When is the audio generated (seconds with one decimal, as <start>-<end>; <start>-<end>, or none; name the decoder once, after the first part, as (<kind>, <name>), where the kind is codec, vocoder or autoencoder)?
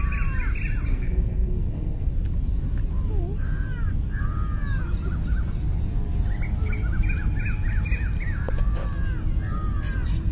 0.9-2.1 (codec, SNAC)